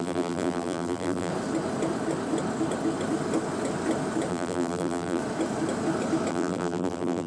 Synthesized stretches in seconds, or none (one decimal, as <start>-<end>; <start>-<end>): 0.0-1.3; 4.3-5.2; 6.3-7.3